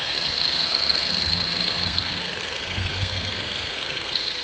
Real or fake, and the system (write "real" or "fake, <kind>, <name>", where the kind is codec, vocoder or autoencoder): fake, codec, SNAC